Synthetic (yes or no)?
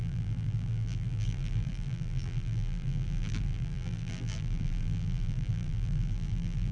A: yes